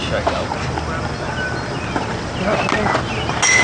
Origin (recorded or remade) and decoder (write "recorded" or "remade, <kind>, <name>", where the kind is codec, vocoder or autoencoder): recorded